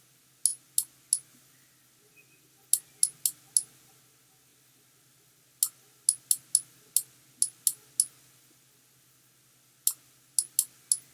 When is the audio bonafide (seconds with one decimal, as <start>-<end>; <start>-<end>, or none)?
0.0-11.1